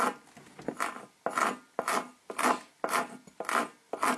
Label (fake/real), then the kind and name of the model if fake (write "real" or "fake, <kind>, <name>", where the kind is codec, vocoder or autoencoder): real